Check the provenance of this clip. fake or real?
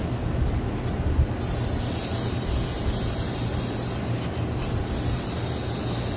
real